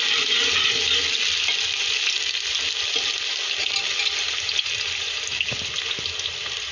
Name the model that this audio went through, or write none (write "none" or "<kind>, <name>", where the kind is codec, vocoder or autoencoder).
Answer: none